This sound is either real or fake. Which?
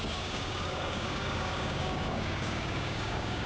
fake